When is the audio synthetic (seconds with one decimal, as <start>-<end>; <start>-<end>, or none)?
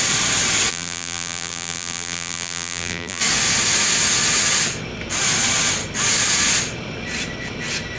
0.7-3.2